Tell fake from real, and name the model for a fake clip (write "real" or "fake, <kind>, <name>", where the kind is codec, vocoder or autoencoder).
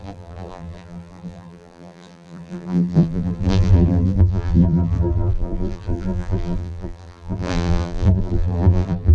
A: fake, vocoder, BigVGAN v2